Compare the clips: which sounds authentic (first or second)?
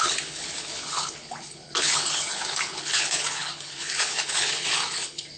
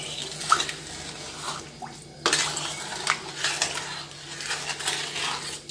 second